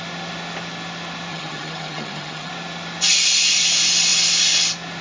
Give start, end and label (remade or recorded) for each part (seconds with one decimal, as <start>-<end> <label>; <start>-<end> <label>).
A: 0.0-1.3 recorded; 1.3-2.5 remade; 2.5-5.0 recorded